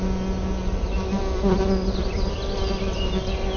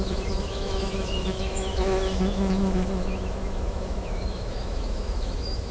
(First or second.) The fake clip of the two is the second